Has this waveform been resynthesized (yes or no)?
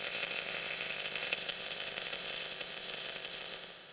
yes